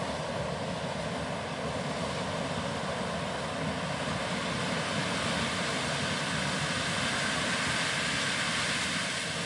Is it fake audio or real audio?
real